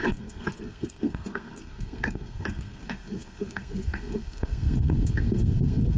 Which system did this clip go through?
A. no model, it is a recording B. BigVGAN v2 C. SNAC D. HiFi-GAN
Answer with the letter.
C